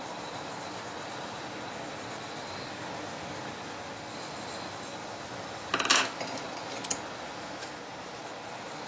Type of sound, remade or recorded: recorded